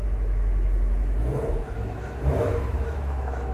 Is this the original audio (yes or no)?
no